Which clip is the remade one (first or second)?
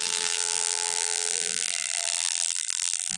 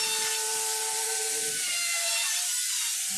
first